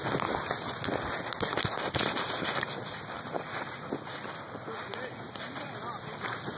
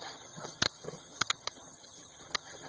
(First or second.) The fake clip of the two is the second